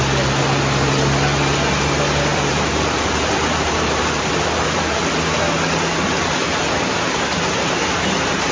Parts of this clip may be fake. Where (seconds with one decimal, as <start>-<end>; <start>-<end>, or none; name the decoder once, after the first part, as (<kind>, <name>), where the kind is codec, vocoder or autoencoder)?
2.3-5.1 (vocoder, BigVGAN v2)